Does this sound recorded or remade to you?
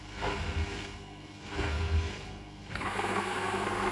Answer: remade